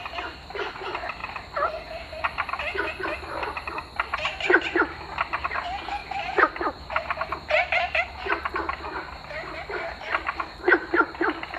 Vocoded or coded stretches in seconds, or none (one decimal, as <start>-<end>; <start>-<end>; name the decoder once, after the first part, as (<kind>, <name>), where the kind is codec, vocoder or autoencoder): 6.0-6.5 (vocoder, BigVGAN v2)